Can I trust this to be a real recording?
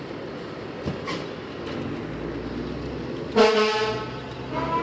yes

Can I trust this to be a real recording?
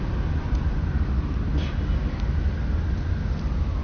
yes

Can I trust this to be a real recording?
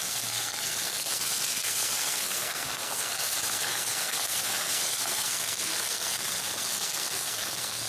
no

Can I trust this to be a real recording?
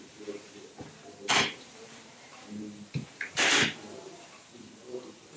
no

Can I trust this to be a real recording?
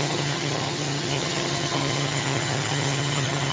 no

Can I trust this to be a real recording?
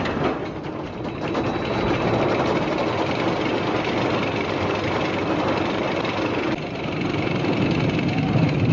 yes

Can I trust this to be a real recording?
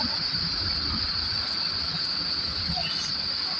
yes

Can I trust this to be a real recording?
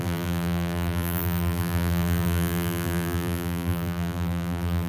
no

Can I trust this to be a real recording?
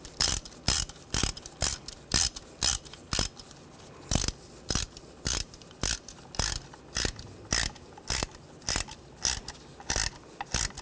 yes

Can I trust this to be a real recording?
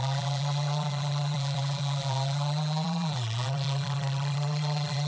no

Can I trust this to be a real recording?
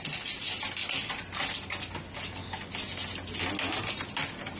yes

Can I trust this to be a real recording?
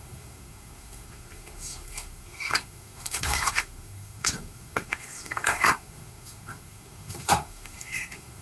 no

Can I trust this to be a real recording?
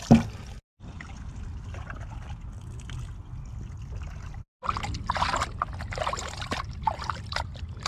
yes